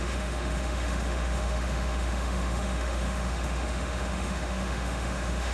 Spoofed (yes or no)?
yes